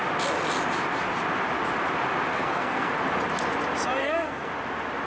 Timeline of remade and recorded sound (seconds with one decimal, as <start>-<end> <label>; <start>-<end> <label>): 0.0-2.3 recorded; 2.3-2.9 remade; 2.9-4.0 recorded; 4.0-4.5 remade; 4.5-5.1 recorded